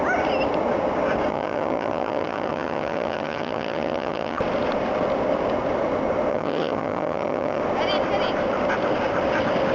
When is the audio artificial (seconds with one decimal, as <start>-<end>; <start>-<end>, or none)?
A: 1.3-4.4; 6.3-7.6